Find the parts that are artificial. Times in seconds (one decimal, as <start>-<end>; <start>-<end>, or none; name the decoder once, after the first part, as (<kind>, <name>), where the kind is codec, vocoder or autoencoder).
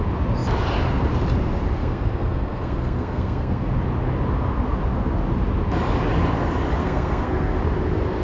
1.8-3.6 (codec, SNAC); 6.8-7.6